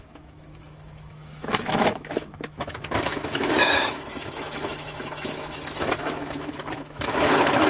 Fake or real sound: fake